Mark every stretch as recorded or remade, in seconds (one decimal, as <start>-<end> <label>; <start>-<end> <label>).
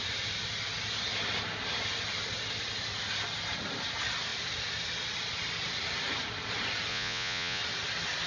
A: 0.0-6.9 recorded; 6.9-7.6 remade; 7.6-8.3 recorded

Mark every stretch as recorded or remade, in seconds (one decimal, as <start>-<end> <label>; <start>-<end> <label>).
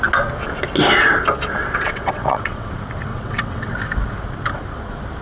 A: 0.0-1.6 recorded; 1.6-2.7 remade; 2.7-3.1 recorded; 3.1-3.7 remade; 3.7-5.2 recorded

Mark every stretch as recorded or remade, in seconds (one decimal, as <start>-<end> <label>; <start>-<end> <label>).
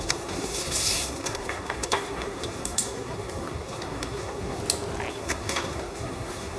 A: 0.0-4.6 remade; 4.6-5.1 recorded; 5.1-6.6 remade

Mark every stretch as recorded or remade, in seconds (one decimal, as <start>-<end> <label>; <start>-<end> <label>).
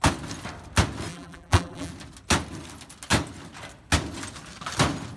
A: 0.0-1.1 recorded; 1.1-1.9 remade; 1.9-5.2 recorded